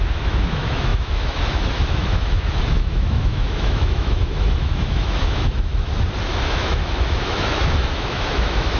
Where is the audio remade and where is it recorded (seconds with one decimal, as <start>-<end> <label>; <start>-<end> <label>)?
0.0-5.7 remade; 5.7-6.5 recorded; 6.5-8.8 remade